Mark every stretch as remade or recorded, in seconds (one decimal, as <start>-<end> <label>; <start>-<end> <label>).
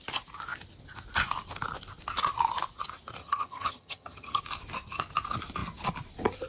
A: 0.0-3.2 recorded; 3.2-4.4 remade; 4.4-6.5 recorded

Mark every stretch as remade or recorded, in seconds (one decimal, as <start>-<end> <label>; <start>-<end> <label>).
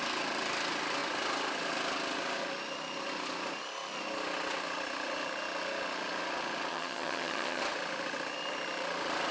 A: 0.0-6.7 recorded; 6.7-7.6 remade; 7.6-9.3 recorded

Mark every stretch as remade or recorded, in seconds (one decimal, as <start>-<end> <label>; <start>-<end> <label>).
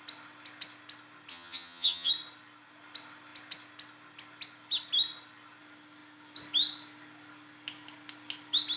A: 0.0-1.3 recorded; 1.3-2.1 remade; 2.1-8.8 recorded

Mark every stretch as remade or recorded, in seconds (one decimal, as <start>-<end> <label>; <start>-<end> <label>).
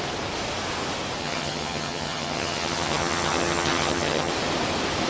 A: 0.0-1.2 recorded; 1.2-4.3 remade; 4.3-5.1 recorded